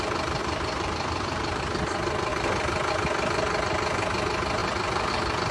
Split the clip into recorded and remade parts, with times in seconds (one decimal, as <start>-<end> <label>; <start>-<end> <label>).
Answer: 0.0-0.4 recorded; 0.4-1.6 remade; 1.6-2.3 recorded; 2.3-2.9 remade; 2.9-5.5 recorded